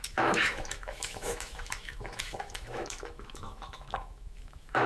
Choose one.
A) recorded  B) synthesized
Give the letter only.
B